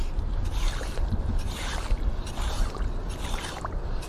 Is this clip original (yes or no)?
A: yes